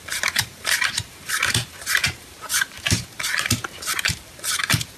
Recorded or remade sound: remade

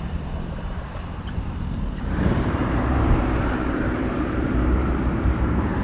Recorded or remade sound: remade